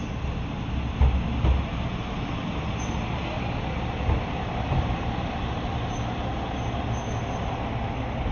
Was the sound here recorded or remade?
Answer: recorded